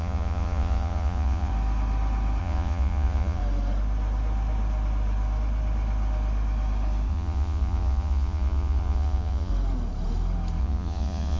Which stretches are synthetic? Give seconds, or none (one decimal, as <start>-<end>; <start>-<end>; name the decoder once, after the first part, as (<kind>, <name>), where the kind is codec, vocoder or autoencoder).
0.0-1.5 (vocoder, Vocos); 2.4-3.4; 7.1-9.5; 10.6-11.4